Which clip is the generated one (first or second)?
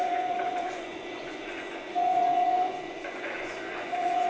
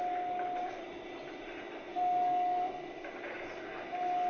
first